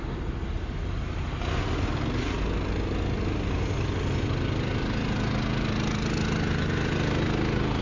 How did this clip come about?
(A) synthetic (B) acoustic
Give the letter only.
B